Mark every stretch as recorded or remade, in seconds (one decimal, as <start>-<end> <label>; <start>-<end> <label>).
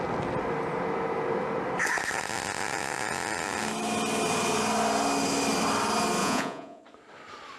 0.0-6.2 recorded; 6.2-6.8 remade; 6.8-7.6 recorded